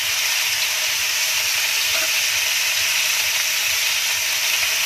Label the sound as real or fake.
real